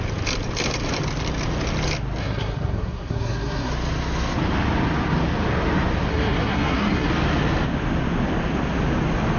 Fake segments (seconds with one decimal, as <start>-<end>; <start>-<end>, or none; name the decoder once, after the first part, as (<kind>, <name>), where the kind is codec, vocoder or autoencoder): 2.2-3.7 (codec, SNAC); 6.1-7.1